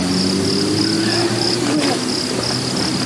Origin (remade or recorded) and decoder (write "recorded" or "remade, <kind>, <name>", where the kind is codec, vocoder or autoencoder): recorded